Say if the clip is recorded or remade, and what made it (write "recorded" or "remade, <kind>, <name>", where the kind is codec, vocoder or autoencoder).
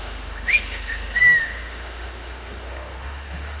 remade, autoencoder, DAC-VAE